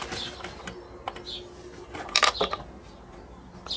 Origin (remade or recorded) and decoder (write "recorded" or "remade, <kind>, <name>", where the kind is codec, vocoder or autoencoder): recorded